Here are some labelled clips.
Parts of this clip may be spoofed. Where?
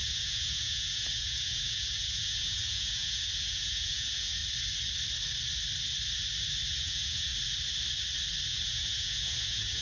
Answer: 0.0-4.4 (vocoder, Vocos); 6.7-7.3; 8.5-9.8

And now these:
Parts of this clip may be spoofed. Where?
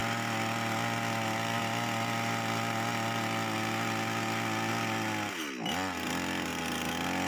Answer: none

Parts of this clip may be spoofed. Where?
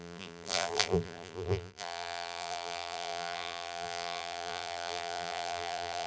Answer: 0.0-6.1 (vocoder, BigVGAN v2)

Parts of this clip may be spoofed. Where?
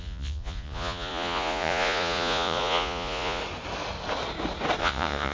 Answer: 0.0-3.4 (vocoder, Vocos); 4.8-5.3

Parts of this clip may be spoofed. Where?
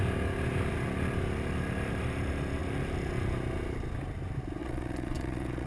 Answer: 4.6-5.7 (vocoder, Vocos)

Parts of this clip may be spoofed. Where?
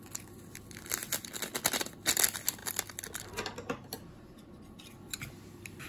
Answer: none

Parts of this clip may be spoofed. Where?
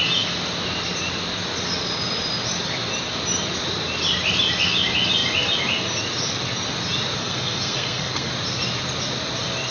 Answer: 7.2-8.3 (codec, SNAC)